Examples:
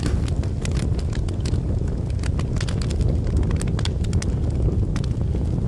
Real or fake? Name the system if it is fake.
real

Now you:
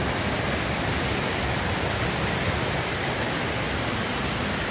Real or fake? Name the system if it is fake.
real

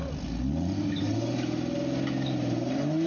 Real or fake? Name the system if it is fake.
real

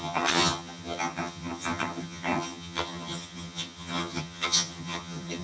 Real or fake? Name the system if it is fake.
fake, vocoder, HiFi-GAN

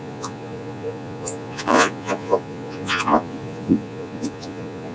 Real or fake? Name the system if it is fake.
fake, vocoder, Vocos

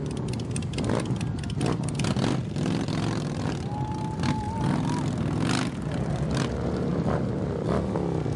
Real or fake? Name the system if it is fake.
real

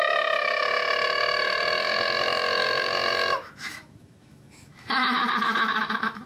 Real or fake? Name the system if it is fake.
fake, autoencoder, DAC-VAE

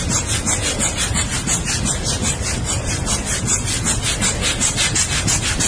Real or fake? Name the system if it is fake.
real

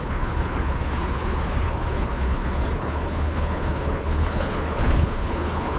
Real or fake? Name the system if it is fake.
fake, codec, HILCodec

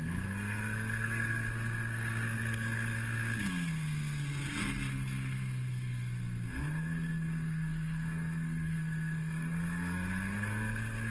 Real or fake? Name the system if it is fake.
fake, codec, SNAC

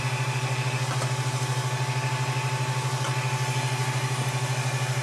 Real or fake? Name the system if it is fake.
real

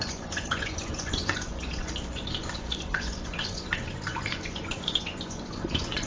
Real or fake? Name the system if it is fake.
fake, vocoder, Vocos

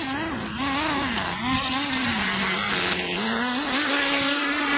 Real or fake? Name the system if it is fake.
real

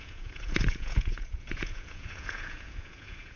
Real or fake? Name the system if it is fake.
fake, vocoder, Vocos